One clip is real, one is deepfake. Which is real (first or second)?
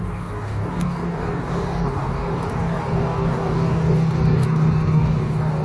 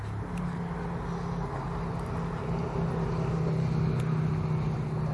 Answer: second